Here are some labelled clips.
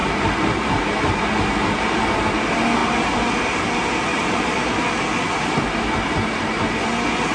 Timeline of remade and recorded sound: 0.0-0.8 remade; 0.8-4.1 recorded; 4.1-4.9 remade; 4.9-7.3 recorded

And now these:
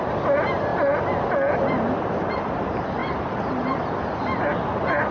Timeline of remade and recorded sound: 0.0-5.1 recorded

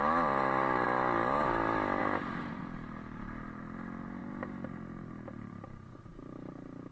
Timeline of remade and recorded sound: 0.0-2.0 recorded; 2.0-2.6 remade; 2.6-4.2 recorded; 4.2-5.5 remade; 5.5-6.9 recorded

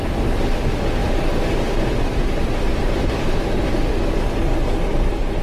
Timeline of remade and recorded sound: 0.0-2.7 recorded; 2.7-3.7 remade; 3.7-5.4 recorded

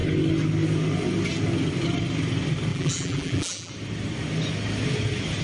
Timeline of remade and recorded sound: 0.0-2.7 recorded; 2.7-3.7 remade; 3.7-5.4 recorded

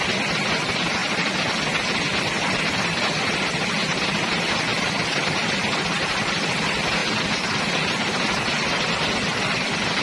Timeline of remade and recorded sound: 0.0-4.7 recorded; 4.7-5.4 remade; 5.4-10.0 recorded

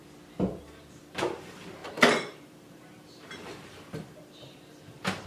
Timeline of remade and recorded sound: 0.0-0.6 recorded; 0.6-5.3 remade

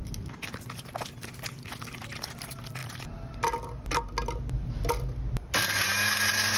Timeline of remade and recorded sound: 0.0-6.6 recorded